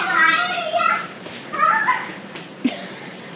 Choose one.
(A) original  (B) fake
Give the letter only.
A